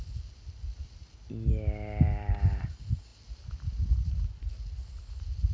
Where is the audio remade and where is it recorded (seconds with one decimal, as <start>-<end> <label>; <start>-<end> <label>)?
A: 0.0-5.5 recorded